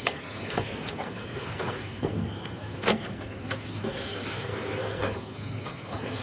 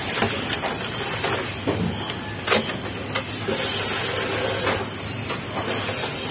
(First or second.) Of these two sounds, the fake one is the first